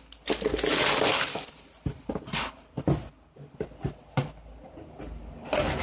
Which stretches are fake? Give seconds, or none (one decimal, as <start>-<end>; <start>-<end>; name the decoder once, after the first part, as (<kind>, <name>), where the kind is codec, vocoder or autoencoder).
none